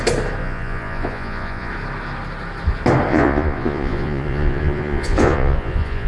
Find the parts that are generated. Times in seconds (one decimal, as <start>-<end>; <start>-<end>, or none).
0.4-1.7; 3.1-6.1